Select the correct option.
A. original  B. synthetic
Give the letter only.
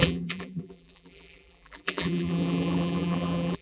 B